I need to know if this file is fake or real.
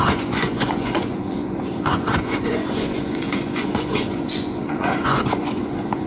fake